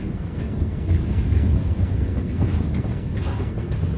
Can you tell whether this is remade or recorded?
remade